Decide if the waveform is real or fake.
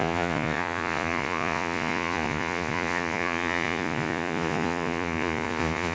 fake